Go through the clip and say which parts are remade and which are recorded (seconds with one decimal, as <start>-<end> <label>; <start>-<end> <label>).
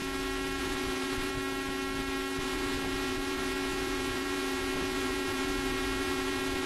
0.0-0.6 recorded; 0.6-1.3 remade; 1.3-2.4 recorded; 2.4-6.7 remade